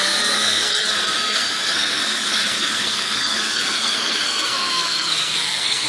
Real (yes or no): no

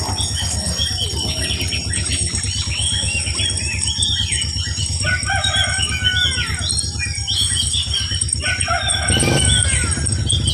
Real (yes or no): yes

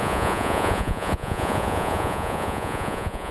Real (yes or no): no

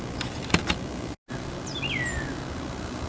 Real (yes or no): yes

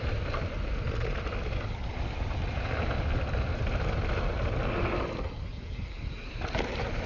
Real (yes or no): yes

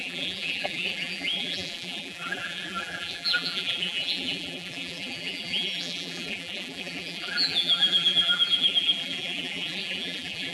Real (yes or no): no